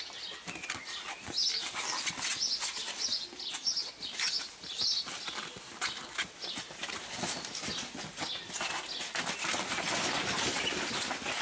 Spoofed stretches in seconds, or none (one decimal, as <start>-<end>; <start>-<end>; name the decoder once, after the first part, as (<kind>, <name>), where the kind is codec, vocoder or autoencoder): none